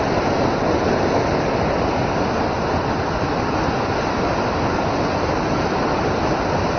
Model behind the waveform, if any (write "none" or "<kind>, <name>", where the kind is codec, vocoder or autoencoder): none